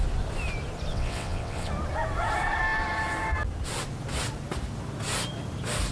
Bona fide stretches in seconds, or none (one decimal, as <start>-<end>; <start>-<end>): 0.0-0.9; 1.7-5.9